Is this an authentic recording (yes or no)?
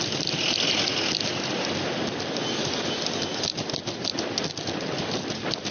yes